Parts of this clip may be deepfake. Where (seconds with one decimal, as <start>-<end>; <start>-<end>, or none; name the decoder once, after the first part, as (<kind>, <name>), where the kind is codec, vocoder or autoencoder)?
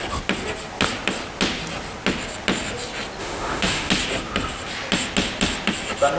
3.2-3.9 (autoencoder, DAC-VAE)